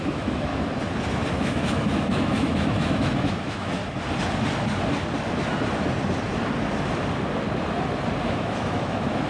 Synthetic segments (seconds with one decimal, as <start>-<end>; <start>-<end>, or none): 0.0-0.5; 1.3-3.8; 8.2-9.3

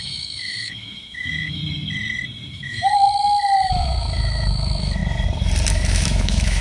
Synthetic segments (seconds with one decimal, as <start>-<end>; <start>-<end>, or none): 0.0-1.6; 2.5-5.0; 5.7-6.6

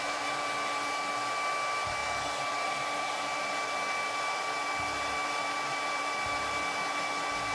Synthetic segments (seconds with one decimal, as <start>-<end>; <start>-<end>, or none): none

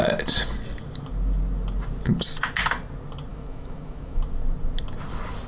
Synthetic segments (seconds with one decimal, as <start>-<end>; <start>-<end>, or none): 3.3-4.2

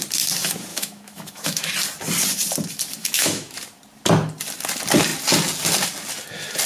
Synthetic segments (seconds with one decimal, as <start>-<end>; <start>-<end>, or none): 0.7-1.7; 3.0-3.5

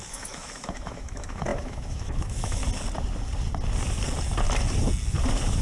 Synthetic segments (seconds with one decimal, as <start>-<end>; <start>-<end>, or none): 0.0-2.6

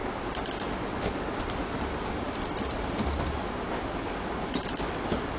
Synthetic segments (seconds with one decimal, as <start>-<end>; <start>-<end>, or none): none